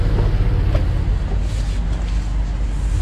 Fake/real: real